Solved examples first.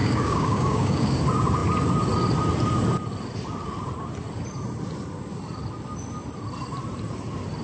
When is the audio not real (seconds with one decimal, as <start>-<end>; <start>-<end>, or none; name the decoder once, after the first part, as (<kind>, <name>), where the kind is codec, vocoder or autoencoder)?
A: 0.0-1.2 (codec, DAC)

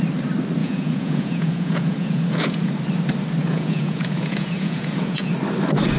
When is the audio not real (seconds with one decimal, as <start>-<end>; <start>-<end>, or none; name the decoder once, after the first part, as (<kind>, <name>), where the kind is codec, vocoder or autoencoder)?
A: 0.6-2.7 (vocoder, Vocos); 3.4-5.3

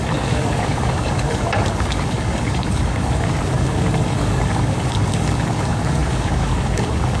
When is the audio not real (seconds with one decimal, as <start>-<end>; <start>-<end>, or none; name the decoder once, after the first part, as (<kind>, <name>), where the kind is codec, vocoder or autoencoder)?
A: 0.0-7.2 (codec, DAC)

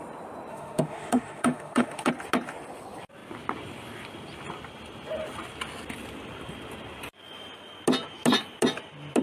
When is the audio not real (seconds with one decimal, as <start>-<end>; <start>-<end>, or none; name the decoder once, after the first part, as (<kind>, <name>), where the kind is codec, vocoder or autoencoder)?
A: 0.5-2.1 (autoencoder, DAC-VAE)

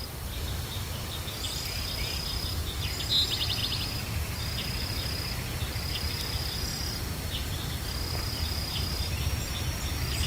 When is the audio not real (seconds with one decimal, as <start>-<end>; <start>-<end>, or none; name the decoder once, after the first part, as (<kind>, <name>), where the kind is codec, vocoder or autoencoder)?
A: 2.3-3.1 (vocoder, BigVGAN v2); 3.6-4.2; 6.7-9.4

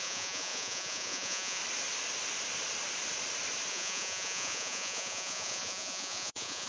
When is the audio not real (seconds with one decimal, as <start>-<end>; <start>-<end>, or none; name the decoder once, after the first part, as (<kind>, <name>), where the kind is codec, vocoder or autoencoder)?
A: 0.0-1.6 (vocoder, Vocos); 3.7-6.7